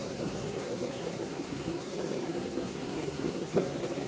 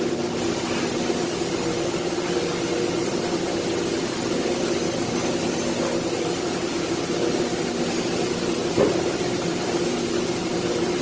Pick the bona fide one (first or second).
second